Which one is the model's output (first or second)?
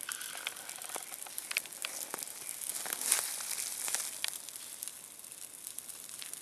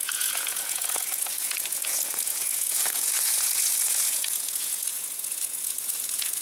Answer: second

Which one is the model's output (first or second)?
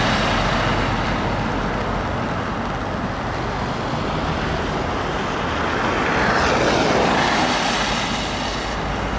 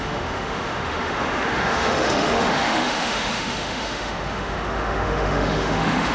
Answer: second